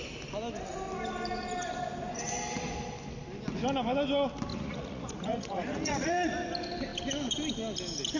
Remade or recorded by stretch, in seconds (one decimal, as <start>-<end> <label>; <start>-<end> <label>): 0.0-4.5 recorded; 4.5-6.3 remade; 6.3-8.2 recorded